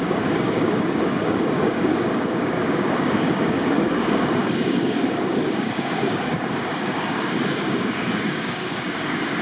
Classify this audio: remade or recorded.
remade